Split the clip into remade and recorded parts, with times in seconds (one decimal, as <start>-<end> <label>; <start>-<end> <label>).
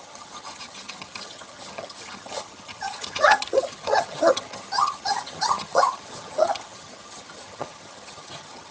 0.0-8.7 remade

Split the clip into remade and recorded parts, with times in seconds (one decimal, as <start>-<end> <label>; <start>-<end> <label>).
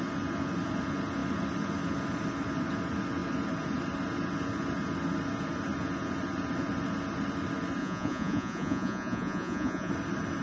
0.0-7.8 recorded; 7.8-9.9 remade; 9.9-10.4 recorded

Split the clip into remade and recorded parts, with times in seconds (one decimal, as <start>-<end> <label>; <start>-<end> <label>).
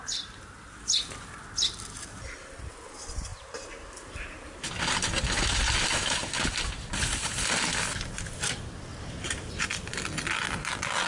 0.0-3.3 recorded; 3.3-4.7 remade; 4.7-8.9 recorded; 8.9-9.7 remade; 9.7-11.1 recorded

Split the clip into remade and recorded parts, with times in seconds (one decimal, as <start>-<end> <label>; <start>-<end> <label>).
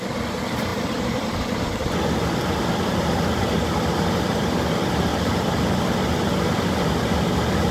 0.0-5.1 recorded; 5.1-5.8 remade; 5.8-7.7 recorded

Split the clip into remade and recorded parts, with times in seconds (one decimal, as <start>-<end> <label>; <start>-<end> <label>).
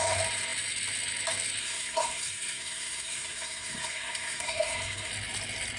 0.0-1.6 recorded; 1.6-5.1 remade; 5.1-5.8 recorded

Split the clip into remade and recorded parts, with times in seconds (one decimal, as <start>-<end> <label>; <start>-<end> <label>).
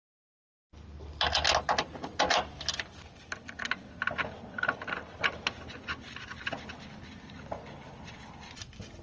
0.0-9.0 recorded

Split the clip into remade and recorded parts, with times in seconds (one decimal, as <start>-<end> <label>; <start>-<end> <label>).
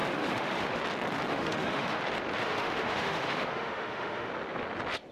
0.0-0.8 remade; 0.8-1.3 recorded; 1.3-2.0 remade; 2.0-2.4 recorded; 2.4-4.3 remade; 4.3-5.1 recorded